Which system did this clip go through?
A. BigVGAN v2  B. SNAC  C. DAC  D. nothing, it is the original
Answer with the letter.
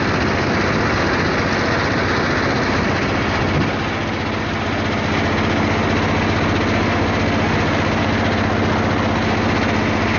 D